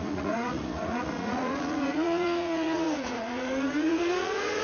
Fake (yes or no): yes